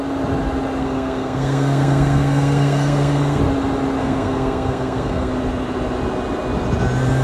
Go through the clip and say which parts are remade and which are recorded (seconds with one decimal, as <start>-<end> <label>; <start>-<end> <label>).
0.0-0.8 recorded; 0.8-3.4 remade; 3.4-4.0 recorded; 4.0-5.3 remade; 5.3-7.2 recorded